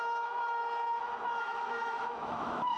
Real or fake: fake